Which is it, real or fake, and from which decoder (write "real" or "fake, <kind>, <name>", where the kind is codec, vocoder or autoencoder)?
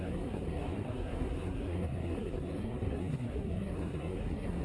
fake, codec, SNAC